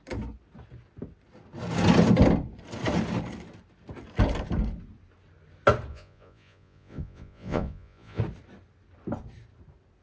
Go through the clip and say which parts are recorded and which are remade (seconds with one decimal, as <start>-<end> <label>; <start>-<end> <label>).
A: 0.0-5.9 recorded; 5.9-8.2 remade; 8.2-10.0 recorded